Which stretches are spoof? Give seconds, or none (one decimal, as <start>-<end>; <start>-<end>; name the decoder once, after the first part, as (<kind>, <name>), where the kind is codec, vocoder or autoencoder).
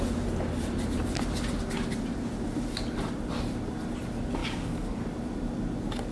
4.4-5.0 (codec, DAC)